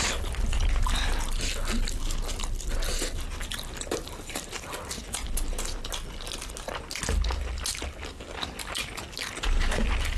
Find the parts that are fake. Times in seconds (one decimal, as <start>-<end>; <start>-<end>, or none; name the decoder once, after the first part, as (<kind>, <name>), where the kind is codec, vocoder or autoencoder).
none